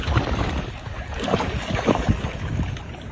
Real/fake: fake